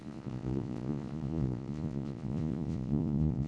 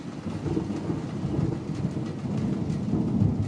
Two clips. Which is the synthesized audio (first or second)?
first